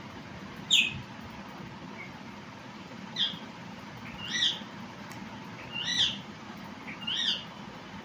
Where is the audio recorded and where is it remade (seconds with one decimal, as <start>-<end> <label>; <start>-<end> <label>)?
0.0-2.6 recorded; 2.6-3.8 remade; 3.8-5.9 recorded; 5.9-6.6 remade; 6.6-8.0 recorded